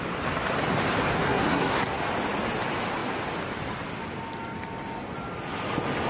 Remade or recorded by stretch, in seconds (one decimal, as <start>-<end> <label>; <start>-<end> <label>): 0.0-1.2 recorded; 1.2-2.0 remade; 2.0-6.1 recorded